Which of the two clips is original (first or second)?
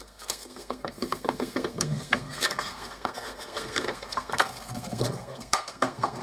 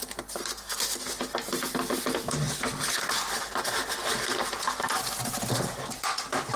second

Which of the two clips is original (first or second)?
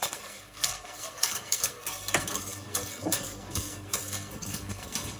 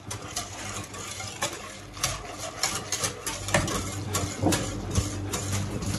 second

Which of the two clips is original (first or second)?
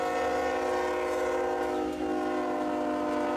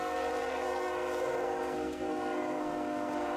first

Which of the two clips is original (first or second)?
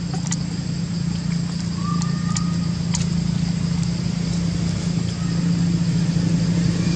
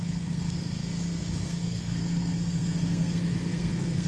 first